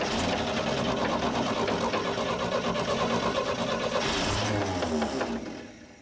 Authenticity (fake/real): real